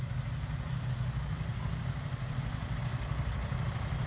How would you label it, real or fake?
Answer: real